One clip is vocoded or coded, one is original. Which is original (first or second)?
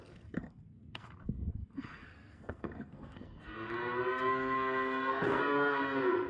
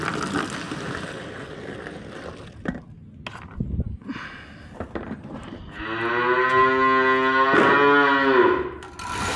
second